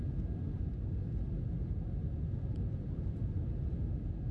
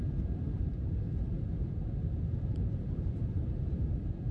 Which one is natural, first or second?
first